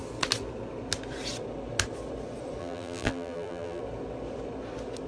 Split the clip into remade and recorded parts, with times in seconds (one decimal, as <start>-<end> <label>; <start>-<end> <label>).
0.0-2.6 recorded; 2.6-3.8 remade; 3.8-5.1 recorded